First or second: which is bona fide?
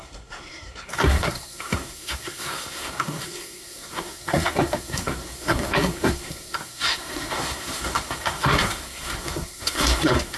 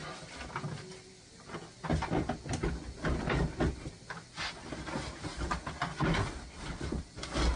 second